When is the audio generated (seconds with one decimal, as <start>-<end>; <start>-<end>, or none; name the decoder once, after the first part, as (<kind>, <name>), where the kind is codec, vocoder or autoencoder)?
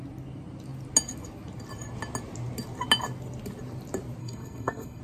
4.2-5.0 (codec, SNAC)